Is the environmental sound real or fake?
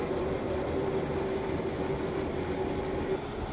real